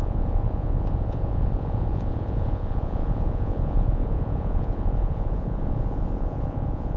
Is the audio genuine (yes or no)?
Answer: no